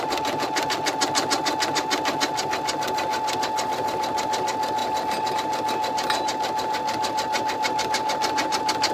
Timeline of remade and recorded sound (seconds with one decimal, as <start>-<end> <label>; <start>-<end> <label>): 0.0-8.9 recorded